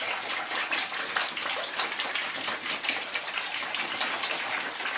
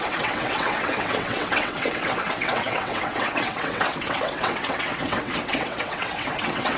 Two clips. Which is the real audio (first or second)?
first